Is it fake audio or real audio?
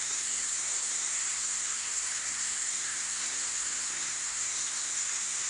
fake